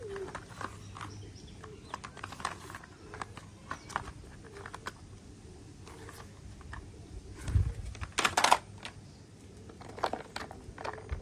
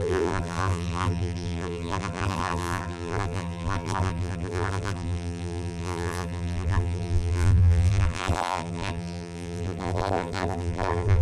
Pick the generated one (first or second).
second